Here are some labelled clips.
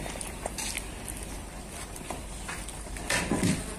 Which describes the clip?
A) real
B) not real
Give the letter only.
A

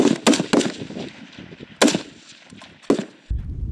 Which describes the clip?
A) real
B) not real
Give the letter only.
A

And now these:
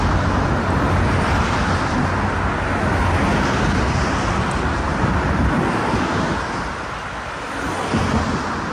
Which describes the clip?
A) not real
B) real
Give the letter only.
B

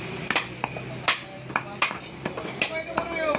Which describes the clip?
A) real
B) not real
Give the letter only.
A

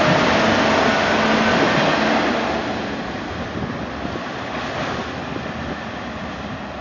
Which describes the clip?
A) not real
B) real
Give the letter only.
B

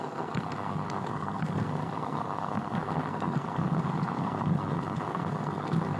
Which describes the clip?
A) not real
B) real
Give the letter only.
A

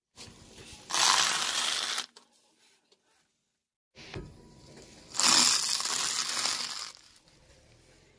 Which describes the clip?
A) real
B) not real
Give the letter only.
A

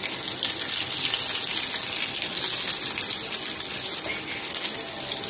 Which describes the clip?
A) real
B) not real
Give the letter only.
A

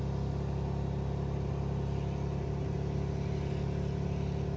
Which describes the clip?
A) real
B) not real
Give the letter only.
A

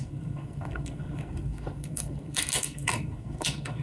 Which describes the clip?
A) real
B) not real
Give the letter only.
B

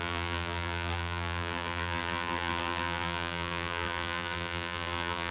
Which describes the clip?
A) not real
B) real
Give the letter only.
A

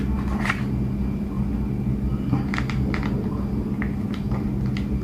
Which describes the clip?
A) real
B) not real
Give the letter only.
A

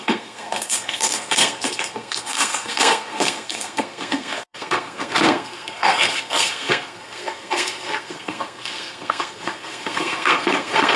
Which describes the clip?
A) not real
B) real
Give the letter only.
A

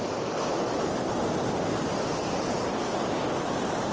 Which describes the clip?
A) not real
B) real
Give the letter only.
B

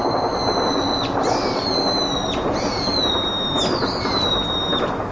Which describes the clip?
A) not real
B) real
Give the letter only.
B